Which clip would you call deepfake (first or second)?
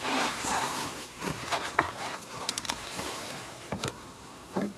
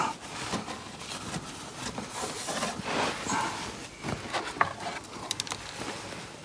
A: first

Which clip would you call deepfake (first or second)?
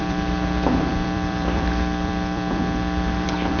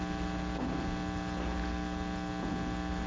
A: first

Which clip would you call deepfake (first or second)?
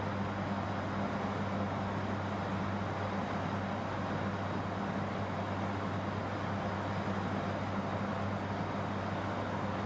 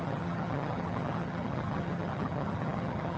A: second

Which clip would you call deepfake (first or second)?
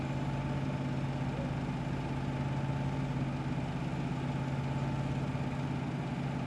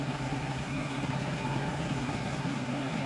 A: second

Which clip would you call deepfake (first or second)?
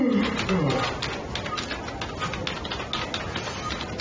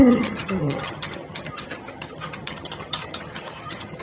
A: second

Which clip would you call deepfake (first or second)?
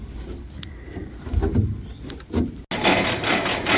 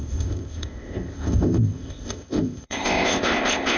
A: second